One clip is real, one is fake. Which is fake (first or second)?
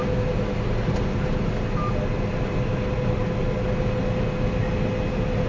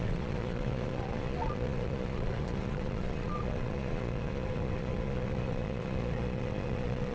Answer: second